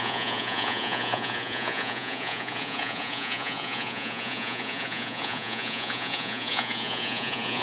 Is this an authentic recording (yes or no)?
no